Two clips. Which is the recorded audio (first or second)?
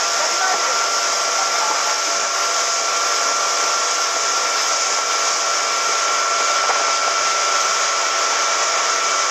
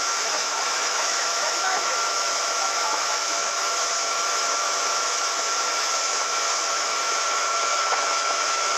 first